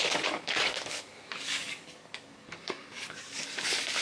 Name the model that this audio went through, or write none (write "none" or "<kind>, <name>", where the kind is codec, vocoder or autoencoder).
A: codec, DAC